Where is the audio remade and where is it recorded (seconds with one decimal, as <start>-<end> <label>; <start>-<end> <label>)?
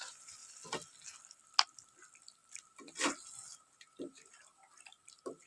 0.0-0.4 remade; 0.4-1.2 recorded; 1.2-2.4 remade; 2.4-5.5 recorded